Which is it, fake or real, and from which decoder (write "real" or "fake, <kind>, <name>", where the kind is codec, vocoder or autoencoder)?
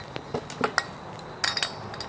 real